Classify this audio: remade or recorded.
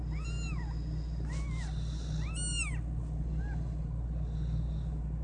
recorded